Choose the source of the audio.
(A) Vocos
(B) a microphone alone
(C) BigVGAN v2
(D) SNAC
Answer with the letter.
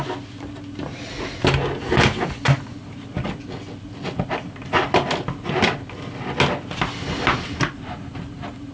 B